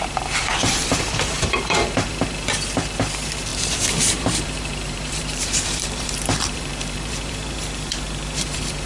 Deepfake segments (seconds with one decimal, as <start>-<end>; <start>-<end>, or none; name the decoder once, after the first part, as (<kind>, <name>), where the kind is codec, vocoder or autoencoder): 0.0-8.9 (vocoder, BigVGAN v2)